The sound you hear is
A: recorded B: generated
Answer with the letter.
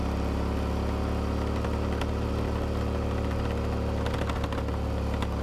A